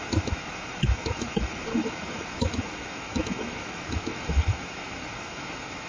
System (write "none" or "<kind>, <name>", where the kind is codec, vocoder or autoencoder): autoencoder, DAC-VAE